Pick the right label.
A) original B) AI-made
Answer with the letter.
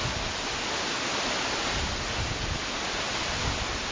A